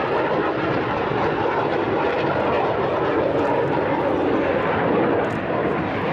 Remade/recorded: recorded